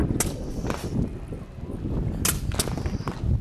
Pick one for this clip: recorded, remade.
recorded